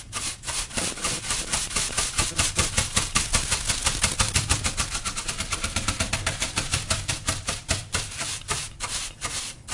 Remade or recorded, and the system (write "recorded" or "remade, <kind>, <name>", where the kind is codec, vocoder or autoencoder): remade, vocoder, BigVGAN v2